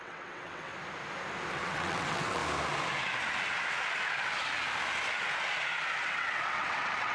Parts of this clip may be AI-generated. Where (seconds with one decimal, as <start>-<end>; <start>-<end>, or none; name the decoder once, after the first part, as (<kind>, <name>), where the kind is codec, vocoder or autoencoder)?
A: 0.0-0.7 (vocoder, WaveNeXt); 1.5-2.4; 6.0-7.1

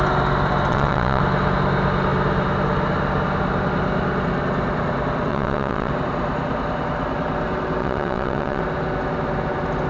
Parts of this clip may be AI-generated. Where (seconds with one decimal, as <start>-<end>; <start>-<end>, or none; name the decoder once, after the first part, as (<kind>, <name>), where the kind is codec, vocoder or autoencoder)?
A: 0.7-1.2 (vocoder, WaveNeXt); 5.3-5.9; 7.8-8.6

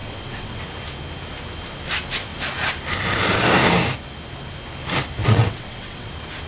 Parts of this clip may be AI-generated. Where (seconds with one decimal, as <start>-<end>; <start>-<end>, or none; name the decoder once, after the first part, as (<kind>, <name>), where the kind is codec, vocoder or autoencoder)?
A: 0.0-0.6 (vocoder, WaveNeXt); 5.2-6.1

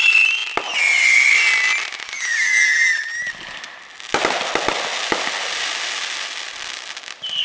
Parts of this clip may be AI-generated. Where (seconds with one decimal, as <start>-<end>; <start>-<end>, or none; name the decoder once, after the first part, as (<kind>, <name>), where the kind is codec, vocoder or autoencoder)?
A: none

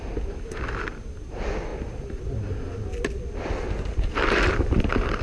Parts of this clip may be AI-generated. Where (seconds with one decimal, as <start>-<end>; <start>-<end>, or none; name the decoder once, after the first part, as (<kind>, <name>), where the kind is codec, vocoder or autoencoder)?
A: none

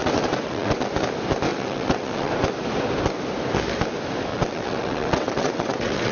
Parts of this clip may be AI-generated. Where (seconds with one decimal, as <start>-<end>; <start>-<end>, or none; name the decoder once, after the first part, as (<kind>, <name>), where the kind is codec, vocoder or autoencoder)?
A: 0.0-0.9 (vocoder, WaveNeXt); 1.5-2.3; 4.3-6.1

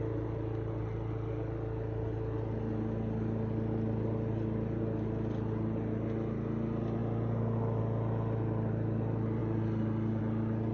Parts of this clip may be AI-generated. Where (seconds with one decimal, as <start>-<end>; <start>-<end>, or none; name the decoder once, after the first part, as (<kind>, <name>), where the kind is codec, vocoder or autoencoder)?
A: none